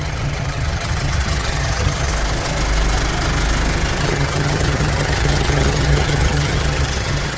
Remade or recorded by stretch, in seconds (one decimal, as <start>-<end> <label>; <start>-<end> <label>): 0.0-2.1 remade; 2.1-4.0 recorded; 4.0-7.4 remade